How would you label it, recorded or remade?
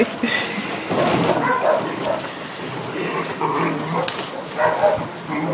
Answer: recorded